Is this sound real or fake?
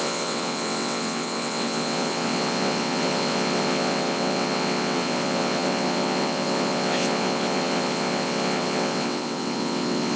fake